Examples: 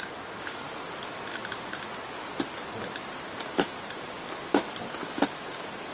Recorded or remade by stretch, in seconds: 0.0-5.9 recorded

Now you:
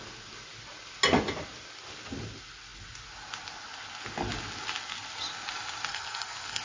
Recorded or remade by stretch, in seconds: 0.0-5.9 recorded; 5.9-6.6 remade

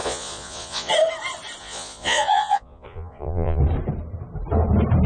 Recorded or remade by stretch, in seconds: 0.0-0.9 remade; 0.9-1.6 recorded; 1.6-3.6 remade; 3.6-5.1 recorded